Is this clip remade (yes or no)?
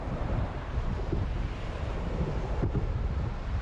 yes